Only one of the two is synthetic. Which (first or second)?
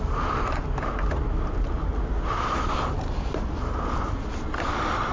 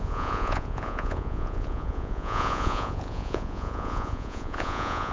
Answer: second